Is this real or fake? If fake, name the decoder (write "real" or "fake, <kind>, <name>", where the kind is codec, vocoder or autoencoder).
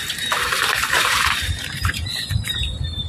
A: fake, vocoder, BigVGAN v2